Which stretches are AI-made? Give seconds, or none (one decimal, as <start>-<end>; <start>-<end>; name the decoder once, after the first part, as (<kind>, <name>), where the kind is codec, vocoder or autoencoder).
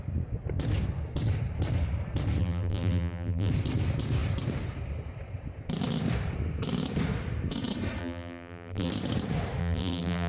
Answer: 2.4-3.5 (vocoder, BigVGAN v2); 8.0-8.9; 9.6-10.3